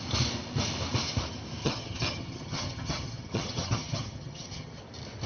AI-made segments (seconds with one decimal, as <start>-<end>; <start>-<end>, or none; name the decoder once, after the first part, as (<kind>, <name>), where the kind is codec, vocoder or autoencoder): 1.6-4.8 (vocoder, HiFi-GAN)